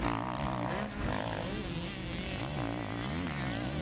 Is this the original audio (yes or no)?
yes